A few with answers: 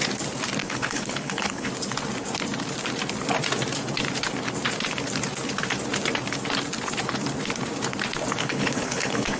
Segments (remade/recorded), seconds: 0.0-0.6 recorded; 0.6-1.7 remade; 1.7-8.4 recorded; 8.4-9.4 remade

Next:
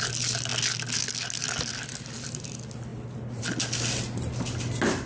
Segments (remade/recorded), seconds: 0.0-5.1 recorded

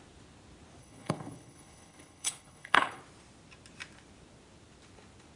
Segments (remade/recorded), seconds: 0.0-0.8 recorded; 0.8-3.0 remade; 3.0-5.4 recorded

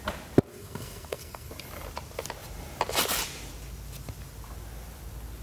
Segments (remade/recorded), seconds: 0.0-0.5 recorded; 0.5-1.5 remade; 1.5-5.4 recorded

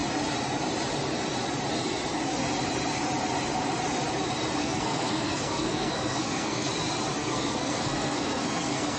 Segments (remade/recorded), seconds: 0.0-4.6 recorded; 4.6-6.7 remade; 6.7-7.2 recorded; 7.2-9.0 remade

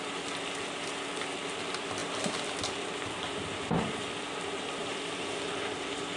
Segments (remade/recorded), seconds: 0.0-2.0 recorded; 2.0-5.5 remade; 5.5-6.2 recorded

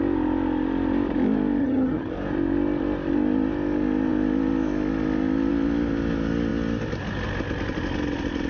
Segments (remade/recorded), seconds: 0.0-1.6 recorded; 1.6-2.1 remade; 2.1-8.5 recorded

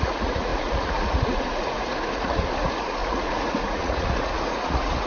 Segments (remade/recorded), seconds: 0.0-5.1 remade